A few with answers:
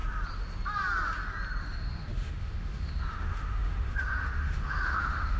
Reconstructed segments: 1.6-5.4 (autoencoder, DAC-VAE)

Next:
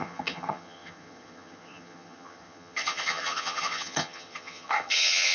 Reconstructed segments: 0.0-5.3 (vocoder, HiFi-GAN)

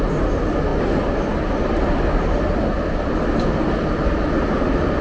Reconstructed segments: none